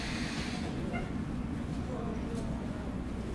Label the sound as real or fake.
fake